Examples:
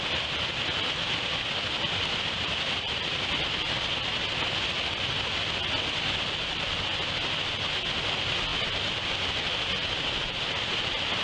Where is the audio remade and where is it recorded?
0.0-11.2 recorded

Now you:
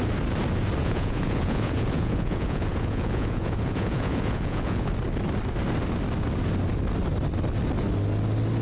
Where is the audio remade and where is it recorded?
0.0-0.8 recorded; 0.8-4.9 remade; 4.9-8.6 recorded

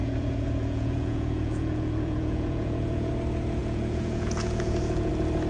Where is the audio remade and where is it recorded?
0.0-3.1 remade; 3.1-3.6 recorded; 3.6-5.1 remade; 5.1-5.5 recorded